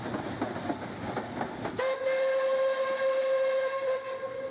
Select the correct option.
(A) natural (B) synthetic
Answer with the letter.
A